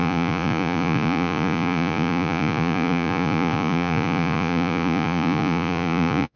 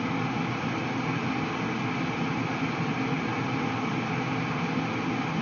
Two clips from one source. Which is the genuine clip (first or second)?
second